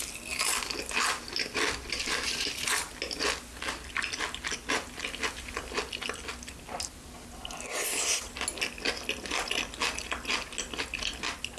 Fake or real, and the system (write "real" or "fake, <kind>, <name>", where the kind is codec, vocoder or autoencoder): real